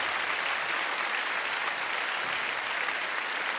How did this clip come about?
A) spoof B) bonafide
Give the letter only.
B